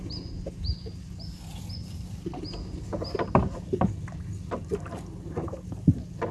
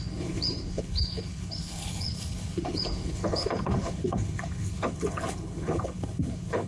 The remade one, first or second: second